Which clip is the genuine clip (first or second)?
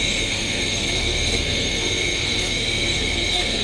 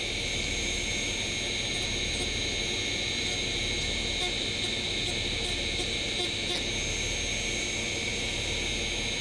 second